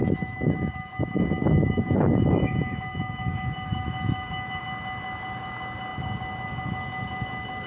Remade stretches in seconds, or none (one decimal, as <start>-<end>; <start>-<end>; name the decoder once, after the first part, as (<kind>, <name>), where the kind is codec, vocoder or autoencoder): 0.0-4.6 (autoencoder, DAC-VAE)